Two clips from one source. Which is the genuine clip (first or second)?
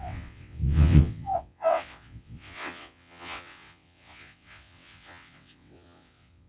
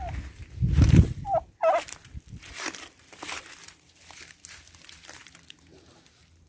second